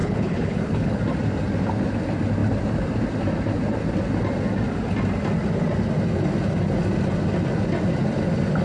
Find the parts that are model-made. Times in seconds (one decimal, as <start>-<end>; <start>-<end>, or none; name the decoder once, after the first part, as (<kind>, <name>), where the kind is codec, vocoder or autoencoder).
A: 0.0-1.0 (codec, HILCodec)